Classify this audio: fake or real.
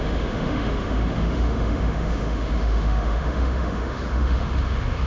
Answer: fake